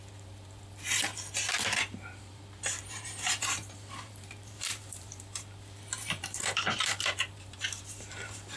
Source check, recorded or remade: remade